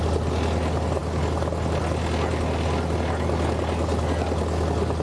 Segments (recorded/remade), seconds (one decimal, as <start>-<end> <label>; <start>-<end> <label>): 0.0-5.0 recorded